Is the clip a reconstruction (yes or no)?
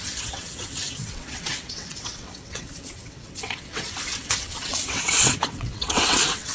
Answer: yes